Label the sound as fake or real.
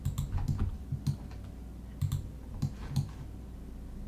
real